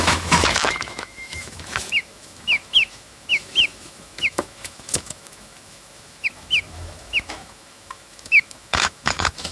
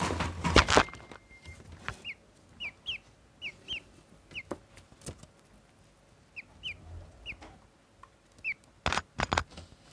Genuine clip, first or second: second